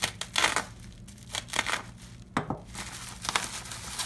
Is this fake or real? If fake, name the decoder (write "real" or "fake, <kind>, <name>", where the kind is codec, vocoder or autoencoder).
real